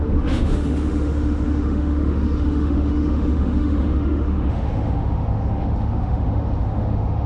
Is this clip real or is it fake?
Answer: fake